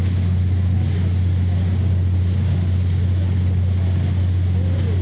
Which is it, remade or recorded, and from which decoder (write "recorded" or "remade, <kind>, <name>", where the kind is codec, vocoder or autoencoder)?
recorded